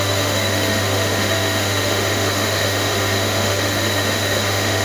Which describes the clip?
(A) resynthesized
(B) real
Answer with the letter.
A